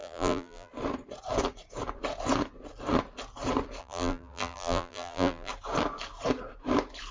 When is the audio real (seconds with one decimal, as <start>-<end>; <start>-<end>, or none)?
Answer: 0.7-3.8; 5.5-7.1